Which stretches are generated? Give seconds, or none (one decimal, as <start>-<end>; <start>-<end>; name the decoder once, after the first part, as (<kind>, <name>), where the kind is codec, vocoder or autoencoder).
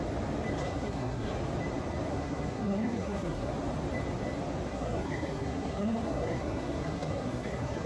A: 0.6-1.3 (codec, SNAC); 2.1-3.5; 4.7-7.9